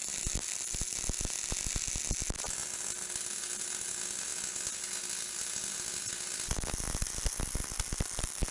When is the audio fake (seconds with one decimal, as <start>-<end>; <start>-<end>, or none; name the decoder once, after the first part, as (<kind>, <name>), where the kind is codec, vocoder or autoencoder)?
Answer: none